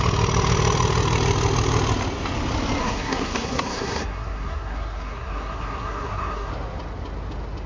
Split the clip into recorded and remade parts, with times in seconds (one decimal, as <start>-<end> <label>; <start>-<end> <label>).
0.0-2.8 recorded; 2.8-6.5 remade; 6.5-7.7 recorded